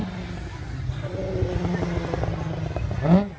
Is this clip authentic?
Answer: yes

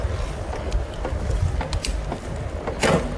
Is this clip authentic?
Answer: yes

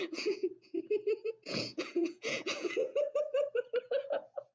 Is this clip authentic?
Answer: no